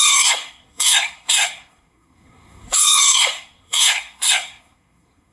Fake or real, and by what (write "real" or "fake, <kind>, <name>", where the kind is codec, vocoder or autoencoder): fake, codec, SNAC